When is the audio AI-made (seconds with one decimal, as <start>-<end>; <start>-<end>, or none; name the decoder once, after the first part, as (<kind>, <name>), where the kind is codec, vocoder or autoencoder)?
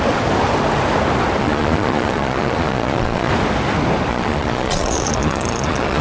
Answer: 1.4-3.3 (vocoder, Vocos); 4.1-6.0